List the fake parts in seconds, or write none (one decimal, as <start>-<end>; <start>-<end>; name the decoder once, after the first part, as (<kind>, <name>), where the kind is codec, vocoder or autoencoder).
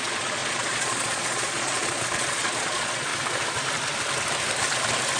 0.0-3.1 (vocoder, Vocos)